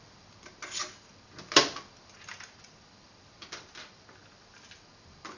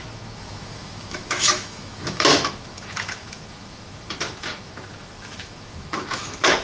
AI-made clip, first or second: second